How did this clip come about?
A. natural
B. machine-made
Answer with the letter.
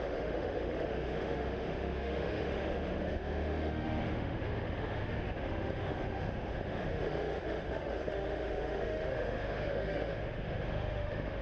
B